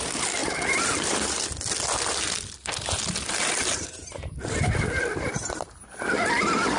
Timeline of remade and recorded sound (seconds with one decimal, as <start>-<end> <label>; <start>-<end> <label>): 0.0-6.8 recorded